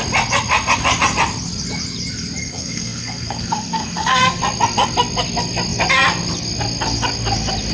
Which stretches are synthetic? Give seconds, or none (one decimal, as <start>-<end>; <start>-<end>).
2.4-4.4